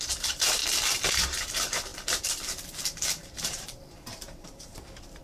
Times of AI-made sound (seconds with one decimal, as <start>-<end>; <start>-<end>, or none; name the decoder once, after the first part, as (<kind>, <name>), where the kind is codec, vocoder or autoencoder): 0.0-0.6 (vocoder, BigVGAN v2); 1.1-5.2